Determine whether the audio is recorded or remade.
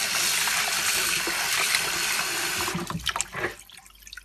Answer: recorded